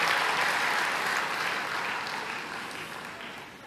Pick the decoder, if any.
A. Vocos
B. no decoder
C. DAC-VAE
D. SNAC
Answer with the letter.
B